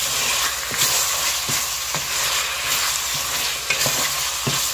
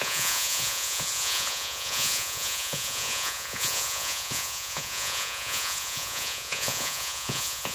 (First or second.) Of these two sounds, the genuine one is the first